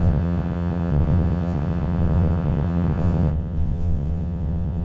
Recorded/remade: remade